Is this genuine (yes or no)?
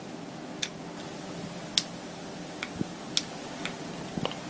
yes